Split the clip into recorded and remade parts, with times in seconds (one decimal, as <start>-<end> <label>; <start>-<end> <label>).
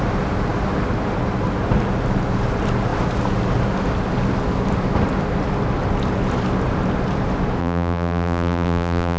0.0-7.6 recorded; 7.6-9.2 remade